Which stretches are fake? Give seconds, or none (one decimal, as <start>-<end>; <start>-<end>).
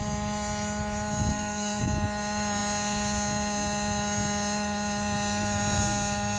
1.3-1.8